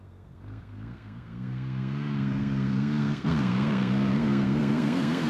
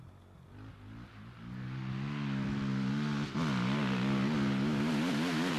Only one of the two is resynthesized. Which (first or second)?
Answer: first